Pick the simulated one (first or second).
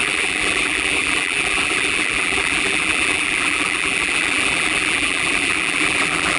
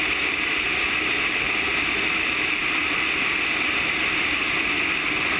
first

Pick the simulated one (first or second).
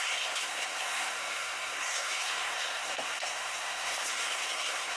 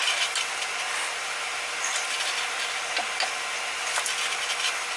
first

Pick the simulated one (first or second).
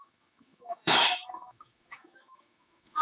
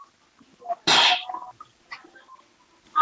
first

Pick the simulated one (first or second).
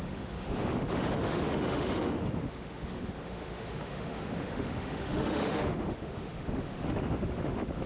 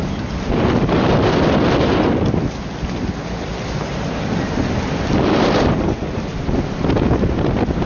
first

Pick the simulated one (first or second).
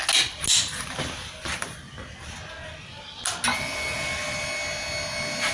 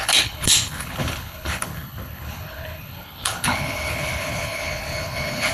second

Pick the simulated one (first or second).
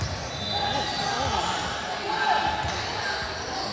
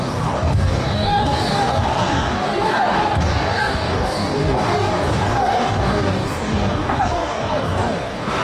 second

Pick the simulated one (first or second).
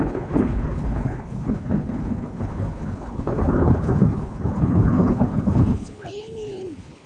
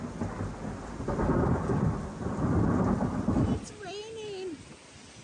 first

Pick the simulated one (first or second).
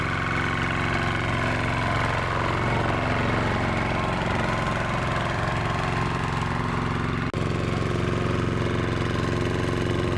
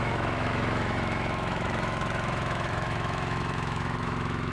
second